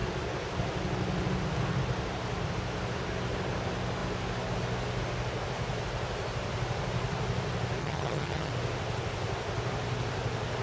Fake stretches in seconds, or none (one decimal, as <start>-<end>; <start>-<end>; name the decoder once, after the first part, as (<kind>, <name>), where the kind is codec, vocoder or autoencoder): 7.8-8.5 (vocoder, HiFi-GAN)